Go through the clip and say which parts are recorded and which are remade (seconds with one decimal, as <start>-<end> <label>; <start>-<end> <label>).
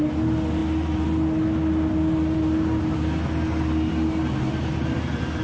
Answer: 0.0-4.7 recorded; 4.7-5.4 remade